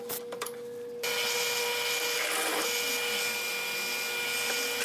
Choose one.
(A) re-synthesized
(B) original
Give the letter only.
B